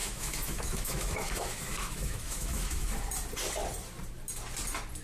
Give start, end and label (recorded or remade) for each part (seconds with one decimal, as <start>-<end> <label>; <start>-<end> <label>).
0.0-3.0 remade; 3.0-5.0 recorded